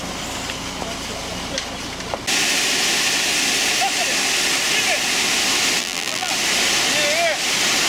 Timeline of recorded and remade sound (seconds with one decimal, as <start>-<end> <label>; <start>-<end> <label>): 0.0-5.8 recorded; 5.8-6.3 remade; 6.3-7.9 recorded